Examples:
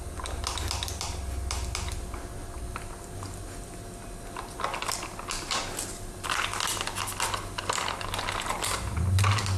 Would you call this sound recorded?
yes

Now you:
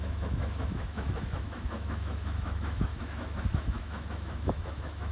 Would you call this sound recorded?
no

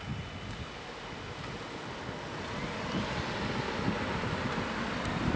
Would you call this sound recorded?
yes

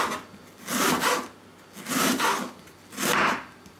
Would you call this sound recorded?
yes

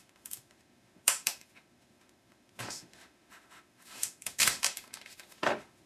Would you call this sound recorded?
no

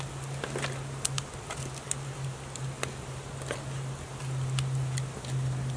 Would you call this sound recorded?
yes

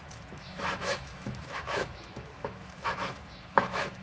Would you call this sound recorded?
no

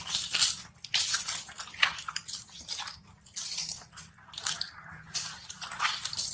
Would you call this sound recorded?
yes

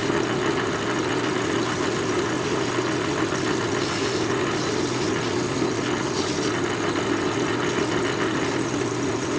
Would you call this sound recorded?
yes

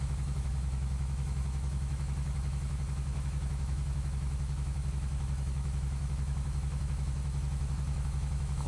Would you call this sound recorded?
no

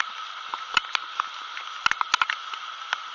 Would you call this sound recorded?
yes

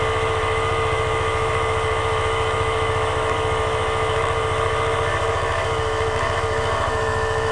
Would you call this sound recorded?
no